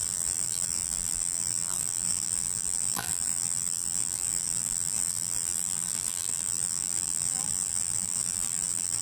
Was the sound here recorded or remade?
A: remade